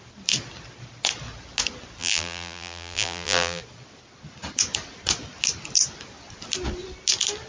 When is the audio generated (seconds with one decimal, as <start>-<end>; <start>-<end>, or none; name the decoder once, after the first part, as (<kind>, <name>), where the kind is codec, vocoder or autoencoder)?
2.0-3.6 (vocoder, BigVGAN v2)

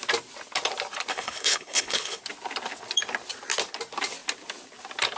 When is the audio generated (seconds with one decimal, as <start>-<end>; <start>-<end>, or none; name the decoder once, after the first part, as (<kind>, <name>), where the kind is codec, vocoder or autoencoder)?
1.1-2.2 (codec, HILCodec)

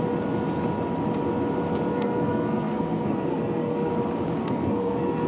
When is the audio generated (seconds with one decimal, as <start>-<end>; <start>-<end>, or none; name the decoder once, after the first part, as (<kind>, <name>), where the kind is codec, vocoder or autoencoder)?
1.9-3.9 (codec, SNAC); 4.4-5.3